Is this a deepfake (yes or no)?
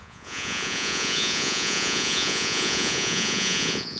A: yes